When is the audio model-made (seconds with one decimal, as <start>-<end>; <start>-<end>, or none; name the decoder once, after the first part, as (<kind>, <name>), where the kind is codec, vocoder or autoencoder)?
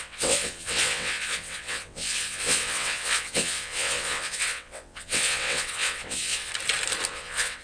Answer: 0.0-6.5 (vocoder, WaveNeXt); 7.1-7.6